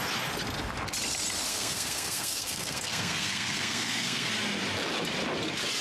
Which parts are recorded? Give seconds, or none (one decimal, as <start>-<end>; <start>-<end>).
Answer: 0.0-1.5; 4.3-5.8